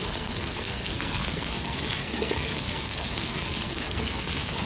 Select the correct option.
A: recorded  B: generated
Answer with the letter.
B